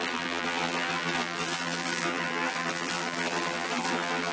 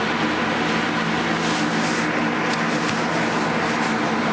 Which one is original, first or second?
second